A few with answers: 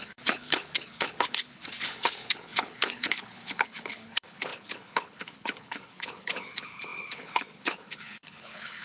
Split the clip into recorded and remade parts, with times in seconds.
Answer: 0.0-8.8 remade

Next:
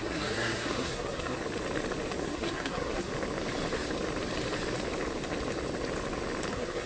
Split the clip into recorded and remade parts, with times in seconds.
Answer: 0.0-1.4 remade; 1.4-2.2 recorded; 2.2-3.1 remade; 3.1-6.5 recorded; 6.5-6.9 remade

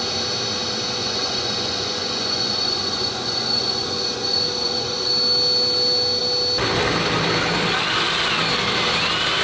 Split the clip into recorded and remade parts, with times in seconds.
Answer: 0.0-1.0 recorded; 1.0-5.1 remade; 5.1-9.4 recorded